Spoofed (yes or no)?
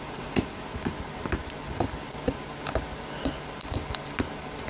no